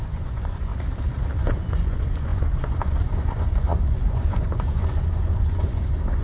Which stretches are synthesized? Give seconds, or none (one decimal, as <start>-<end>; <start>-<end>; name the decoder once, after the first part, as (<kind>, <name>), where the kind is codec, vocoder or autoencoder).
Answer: 0.0-0.7 (vocoder, Vocos); 1.4-6.2